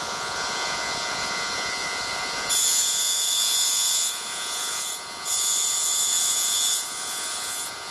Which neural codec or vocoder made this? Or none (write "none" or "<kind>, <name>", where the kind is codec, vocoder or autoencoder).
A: vocoder, Vocos